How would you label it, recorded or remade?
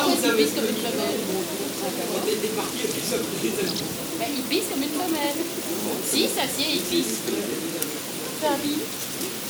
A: recorded